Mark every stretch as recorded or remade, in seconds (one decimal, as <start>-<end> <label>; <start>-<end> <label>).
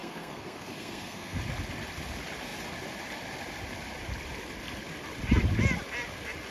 0.0-1.4 remade; 1.4-6.5 recorded